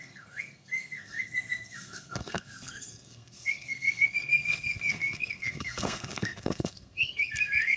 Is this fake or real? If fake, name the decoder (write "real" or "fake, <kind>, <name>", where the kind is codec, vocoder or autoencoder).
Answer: fake, codec, SNAC